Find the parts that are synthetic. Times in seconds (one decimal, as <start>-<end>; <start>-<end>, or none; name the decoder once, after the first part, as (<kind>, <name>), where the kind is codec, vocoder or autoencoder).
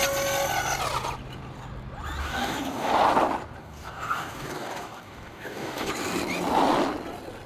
2.2-2.9 (codec, DAC); 3.6-5.9